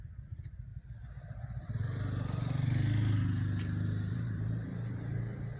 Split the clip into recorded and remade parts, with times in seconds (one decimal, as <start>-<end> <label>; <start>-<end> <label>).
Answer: 0.0-0.7 remade; 0.7-4.1 recorded; 4.1-5.6 remade